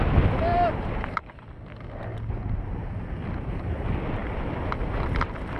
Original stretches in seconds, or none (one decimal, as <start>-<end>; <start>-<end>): 0.0-0.5; 1.2-2.1; 2.9-5.6